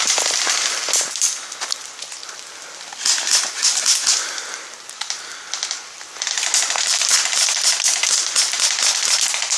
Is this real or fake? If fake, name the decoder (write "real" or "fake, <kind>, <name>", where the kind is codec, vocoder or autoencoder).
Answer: real